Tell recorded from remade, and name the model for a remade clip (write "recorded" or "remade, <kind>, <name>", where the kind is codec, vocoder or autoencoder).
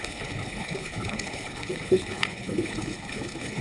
remade, codec, HILCodec